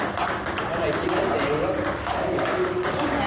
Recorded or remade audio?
recorded